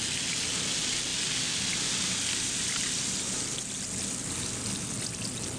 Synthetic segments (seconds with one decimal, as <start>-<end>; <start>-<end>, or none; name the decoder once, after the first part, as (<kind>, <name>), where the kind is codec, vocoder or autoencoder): none